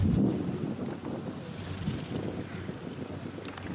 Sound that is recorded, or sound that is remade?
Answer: recorded